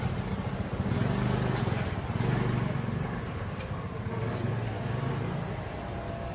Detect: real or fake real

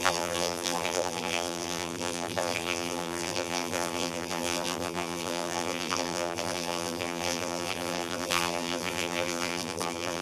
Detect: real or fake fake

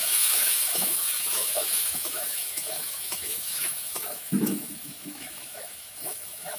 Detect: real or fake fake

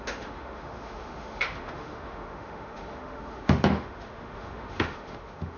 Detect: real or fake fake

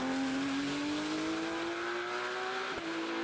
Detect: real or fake real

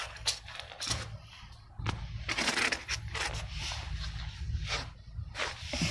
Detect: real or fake real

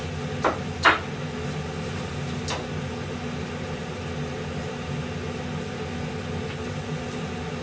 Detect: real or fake real